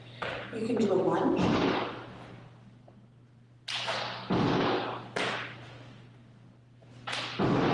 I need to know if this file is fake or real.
real